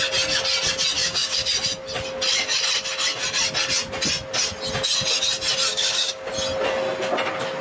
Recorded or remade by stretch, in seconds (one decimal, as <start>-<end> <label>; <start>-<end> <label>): 0.0-1.0 recorded; 1.0-1.5 remade; 1.5-5.7 recorded; 5.7-6.3 remade; 6.3-7.6 recorded